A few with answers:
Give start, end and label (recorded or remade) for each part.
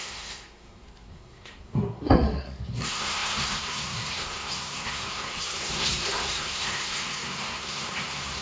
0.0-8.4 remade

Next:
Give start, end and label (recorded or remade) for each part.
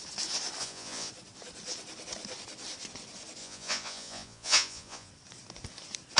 0.0-0.6 recorded; 0.6-1.1 remade; 1.1-3.4 recorded; 3.4-5.1 remade; 5.1-6.2 recorded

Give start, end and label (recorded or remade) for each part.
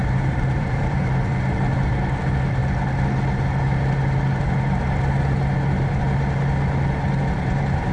0.0-1.1 remade; 1.1-7.9 recorded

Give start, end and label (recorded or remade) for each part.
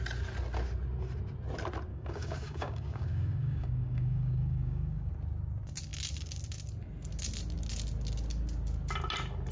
0.0-1.9 recorded; 1.9-5.1 remade; 5.1-9.5 recorded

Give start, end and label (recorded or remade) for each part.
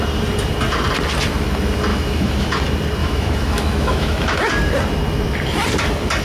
0.0-1.9 recorded; 1.9-2.6 remade; 2.6-3.0 recorded; 3.0-4.5 remade; 4.5-6.2 recorded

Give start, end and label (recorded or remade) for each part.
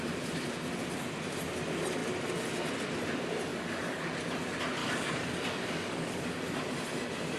0.0-3.5 recorded; 3.5-4.1 remade; 4.1-4.8 recorded; 4.8-6.6 remade; 6.6-7.4 recorded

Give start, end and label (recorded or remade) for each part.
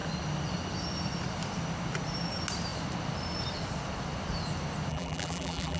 0.0-4.9 recorded; 4.9-5.8 remade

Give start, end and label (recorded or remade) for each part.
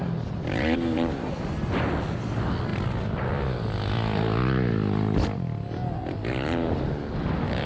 0.0-7.7 recorded